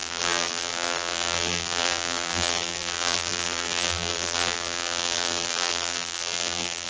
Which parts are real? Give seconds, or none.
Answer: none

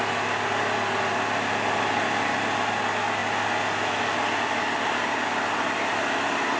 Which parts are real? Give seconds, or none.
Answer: 0.0-6.6

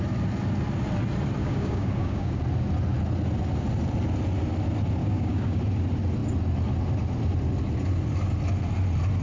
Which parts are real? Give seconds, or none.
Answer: 0.0-1.4; 2.4-5.0; 5.6-9.2

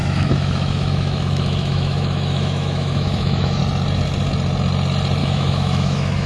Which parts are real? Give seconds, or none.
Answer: 3.6-5.2

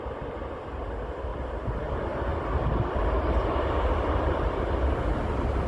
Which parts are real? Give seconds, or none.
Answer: 0.0-1.3; 1.9-5.7